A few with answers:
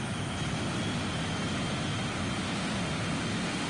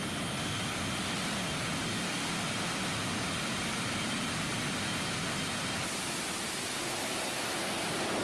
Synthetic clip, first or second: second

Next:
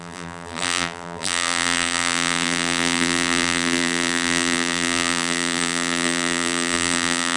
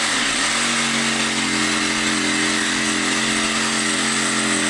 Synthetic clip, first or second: first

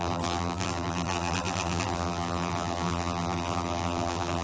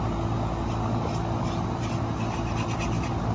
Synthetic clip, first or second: first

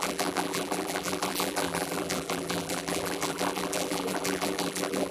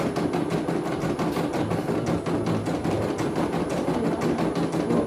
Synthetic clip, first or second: first